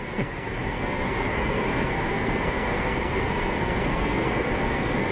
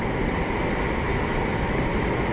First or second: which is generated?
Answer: first